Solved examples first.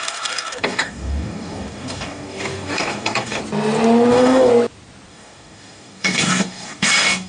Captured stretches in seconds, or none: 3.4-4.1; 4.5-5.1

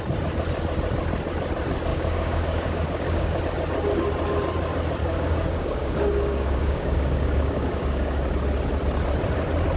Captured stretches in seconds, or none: 0.0-1.9; 3.4-5.0; 8.2-9.8

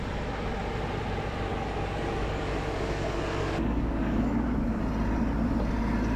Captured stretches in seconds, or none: 0.0-1.5; 4.8-6.2